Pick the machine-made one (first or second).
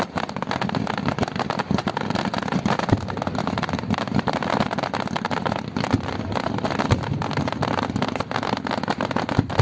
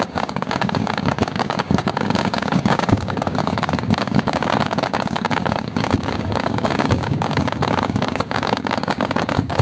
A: second